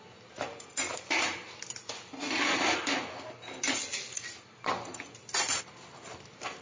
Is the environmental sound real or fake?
real